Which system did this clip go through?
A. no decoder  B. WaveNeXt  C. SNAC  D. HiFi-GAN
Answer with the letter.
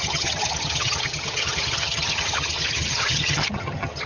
D